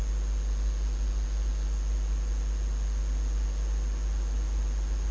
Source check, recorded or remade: recorded